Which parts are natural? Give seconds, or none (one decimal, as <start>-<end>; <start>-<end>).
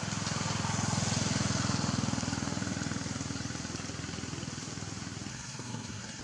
0.0-5.3